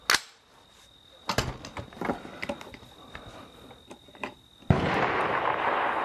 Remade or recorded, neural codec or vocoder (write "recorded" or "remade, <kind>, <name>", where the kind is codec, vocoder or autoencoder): recorded